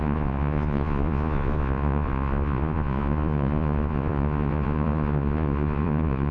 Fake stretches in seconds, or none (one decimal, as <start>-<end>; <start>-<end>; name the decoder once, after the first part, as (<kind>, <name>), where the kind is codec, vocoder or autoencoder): 0.0-6.3 (vocoder, Vocos)